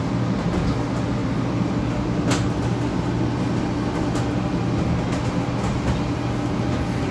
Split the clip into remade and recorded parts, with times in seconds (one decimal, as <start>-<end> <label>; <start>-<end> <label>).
0.0-7.1 recorded